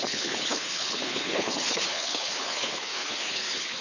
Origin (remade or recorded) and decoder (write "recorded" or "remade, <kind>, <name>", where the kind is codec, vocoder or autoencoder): remade, codec, HILCodec